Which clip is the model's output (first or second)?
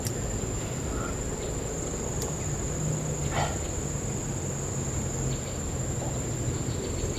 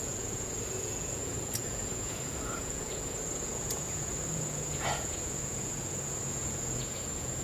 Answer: second